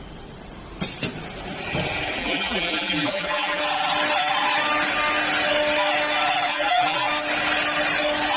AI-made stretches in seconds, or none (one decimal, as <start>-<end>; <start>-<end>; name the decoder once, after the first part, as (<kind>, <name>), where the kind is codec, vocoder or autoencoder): 2.2-3.6 (vocoder, BigVGAN v2); 6.5-7.1